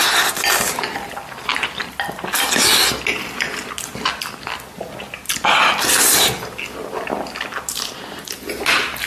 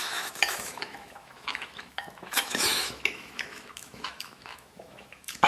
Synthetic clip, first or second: second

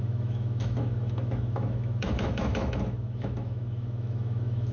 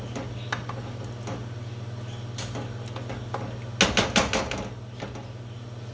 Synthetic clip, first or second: first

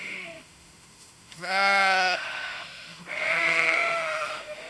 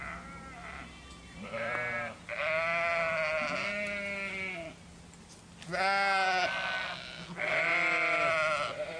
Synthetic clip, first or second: first